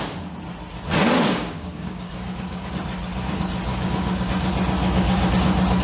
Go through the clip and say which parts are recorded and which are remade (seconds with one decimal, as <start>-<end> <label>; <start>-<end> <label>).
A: 0.0-1.0 recorded; 1.0-2.7 remade; 2.7-3.7 recorded; 3.7-4.3 remade; 4.3-4.8 recorded; 4.8-5.3 remade; 5.3-5.8 recorded